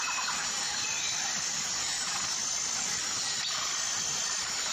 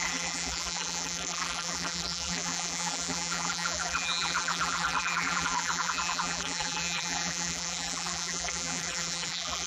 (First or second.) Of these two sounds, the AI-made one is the second